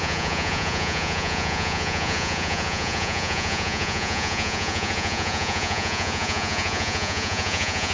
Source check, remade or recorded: remade